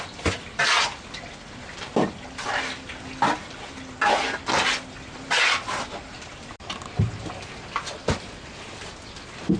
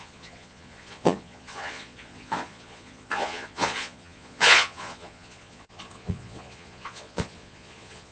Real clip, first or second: first